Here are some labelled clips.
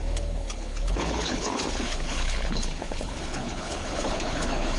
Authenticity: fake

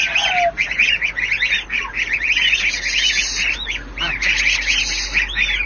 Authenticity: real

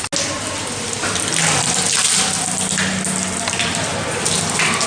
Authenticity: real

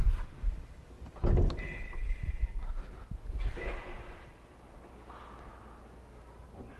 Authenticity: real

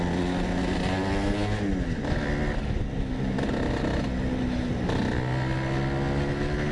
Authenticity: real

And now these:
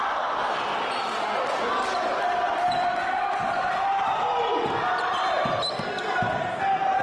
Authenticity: real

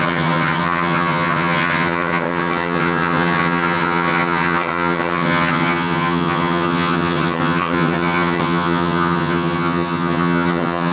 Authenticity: fake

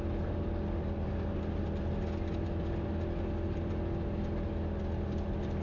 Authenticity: real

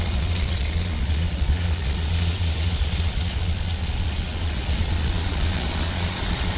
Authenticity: fake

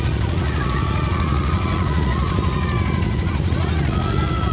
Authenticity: fake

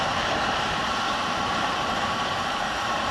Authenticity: fake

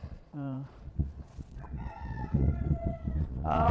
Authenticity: fake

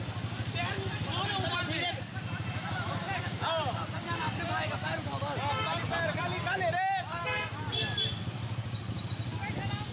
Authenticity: real